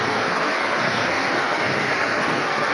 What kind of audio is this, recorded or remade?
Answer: remade